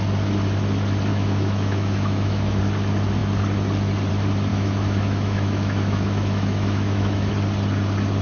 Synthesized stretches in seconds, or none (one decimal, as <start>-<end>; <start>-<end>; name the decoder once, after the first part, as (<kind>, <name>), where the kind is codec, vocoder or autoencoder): 1.1-2.6 (autoencoder, DAC-VAE); 4.5-7.3